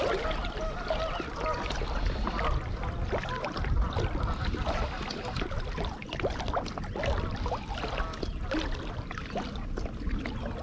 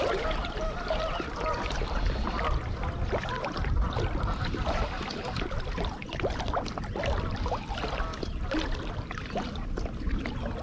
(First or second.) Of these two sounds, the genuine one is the first